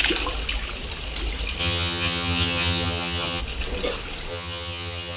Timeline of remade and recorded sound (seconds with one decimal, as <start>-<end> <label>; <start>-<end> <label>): 0.0-1.6 recorded; 1.6-3.4 remade; 3.4-4.3 recorded; 4.3-5.2 remade